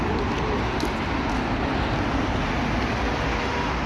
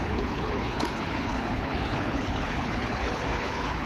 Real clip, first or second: first